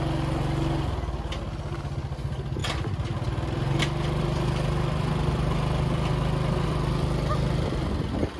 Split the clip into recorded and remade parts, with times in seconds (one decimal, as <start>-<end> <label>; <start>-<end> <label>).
0.0-8.4 recorded